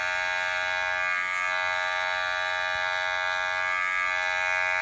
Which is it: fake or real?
real